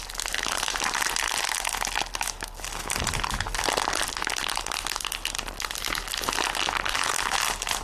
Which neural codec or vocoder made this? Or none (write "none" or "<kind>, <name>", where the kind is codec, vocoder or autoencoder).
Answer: none